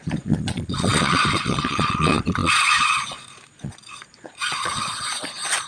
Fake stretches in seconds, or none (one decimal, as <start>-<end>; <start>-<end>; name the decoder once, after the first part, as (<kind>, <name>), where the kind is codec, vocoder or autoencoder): 0.0-5.7 (vocoder, Vocos)